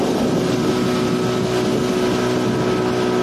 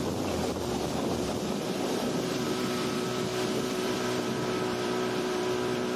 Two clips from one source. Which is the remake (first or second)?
second